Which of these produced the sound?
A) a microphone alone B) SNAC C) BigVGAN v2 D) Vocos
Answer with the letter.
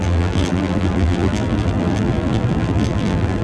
C